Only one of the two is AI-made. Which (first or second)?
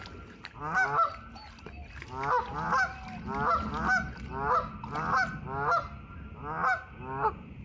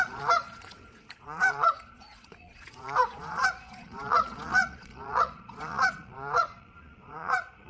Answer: second